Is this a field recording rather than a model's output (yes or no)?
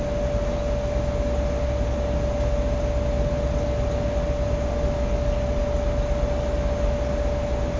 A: yes